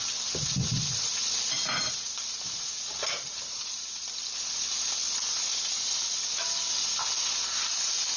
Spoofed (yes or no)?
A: no